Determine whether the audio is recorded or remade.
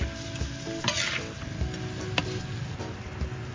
recorded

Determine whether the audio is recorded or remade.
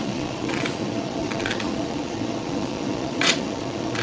remade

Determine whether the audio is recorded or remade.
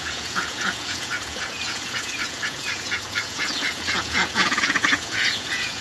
remade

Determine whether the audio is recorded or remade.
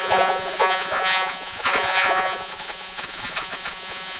remade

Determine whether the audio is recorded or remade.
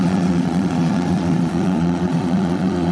remade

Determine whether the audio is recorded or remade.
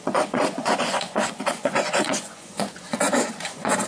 remade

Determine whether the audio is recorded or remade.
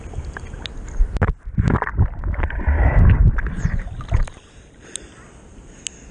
recorded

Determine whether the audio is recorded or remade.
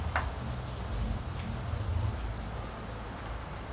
recorded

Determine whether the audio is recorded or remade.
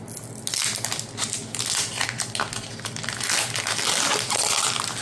recorded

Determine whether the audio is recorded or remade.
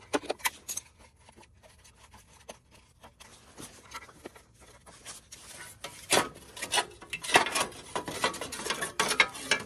recorded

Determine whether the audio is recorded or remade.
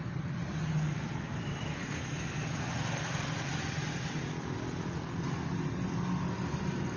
recorded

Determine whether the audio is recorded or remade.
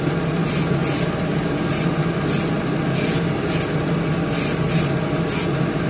recorded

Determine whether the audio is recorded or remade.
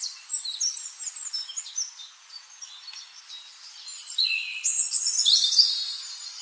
recorded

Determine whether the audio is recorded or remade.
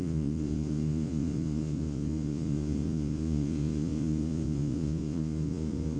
remade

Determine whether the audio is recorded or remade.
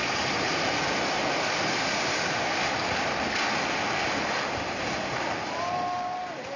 recorded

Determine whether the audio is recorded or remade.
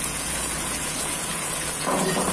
remade